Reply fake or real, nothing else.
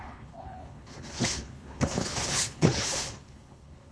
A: fake